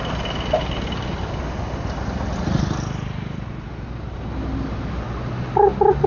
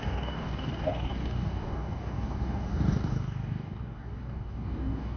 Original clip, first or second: first